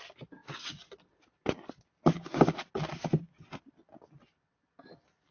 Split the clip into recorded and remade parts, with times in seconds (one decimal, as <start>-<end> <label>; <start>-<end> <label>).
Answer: 0.0-5.3 recorded